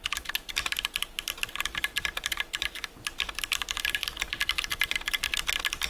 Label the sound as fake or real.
real